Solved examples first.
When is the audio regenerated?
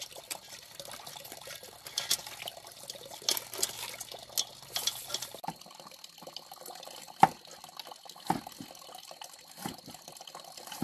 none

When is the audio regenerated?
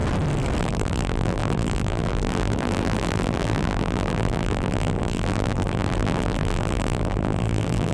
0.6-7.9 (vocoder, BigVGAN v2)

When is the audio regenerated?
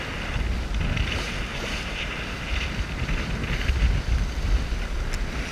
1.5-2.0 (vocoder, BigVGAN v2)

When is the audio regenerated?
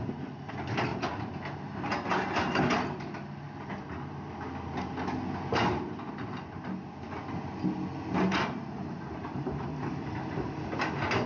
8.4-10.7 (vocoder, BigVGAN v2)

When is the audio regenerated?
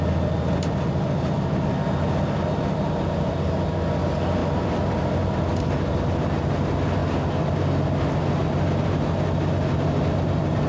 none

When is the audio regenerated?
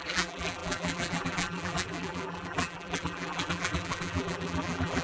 0.0-5.0 (vocoder, BigVGAN v2)